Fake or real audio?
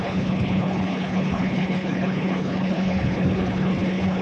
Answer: fake